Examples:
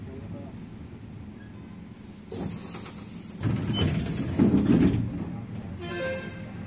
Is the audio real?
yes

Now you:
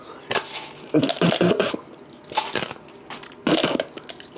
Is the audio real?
yes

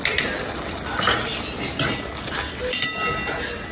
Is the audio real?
yes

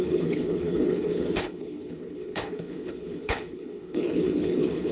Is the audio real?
no